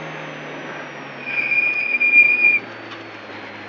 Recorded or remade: recorded